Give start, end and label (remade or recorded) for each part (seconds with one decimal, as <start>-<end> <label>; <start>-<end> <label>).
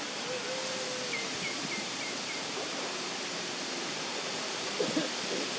0.0-1.3 recorded; 1.3-4.7 remade; 4.7-5.6 recorded